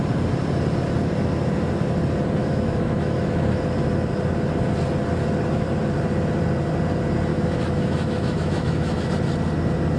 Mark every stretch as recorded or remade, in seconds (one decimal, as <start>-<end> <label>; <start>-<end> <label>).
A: 0.0-2.4 recorded; 2.4-3.6 remade; 3.6-7.3 recorded; 7.3-9.1 remade; 9.1-10.0 recorded